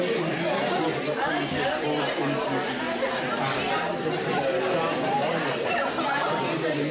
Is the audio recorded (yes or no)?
yes